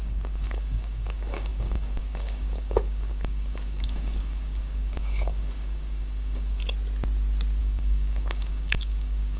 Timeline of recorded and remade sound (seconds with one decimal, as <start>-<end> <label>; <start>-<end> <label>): 0.0-6.6 remade; 6.6-7.6 recorded; 7.6-9.4 remade